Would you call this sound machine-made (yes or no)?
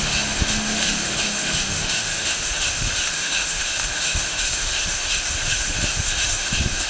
yes